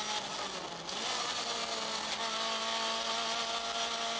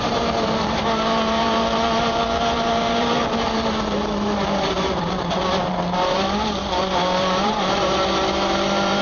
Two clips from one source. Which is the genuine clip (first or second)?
first